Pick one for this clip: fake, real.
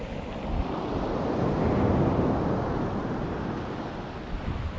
real